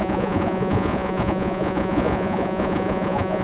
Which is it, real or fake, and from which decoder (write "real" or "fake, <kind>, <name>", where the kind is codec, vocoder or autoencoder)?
fake, vocoder, Vocos